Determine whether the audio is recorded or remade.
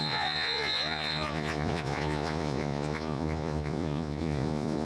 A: remade